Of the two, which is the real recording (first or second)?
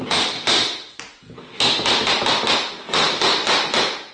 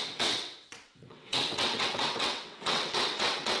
first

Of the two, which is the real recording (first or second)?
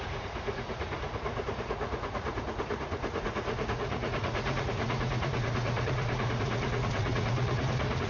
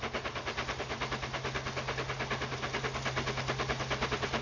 second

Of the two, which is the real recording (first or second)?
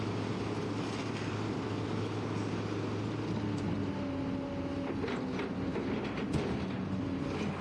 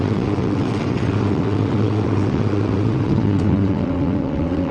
first